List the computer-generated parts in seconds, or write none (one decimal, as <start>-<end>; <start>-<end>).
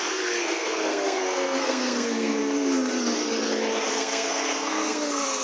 0.0-2.4; 3.9-5.4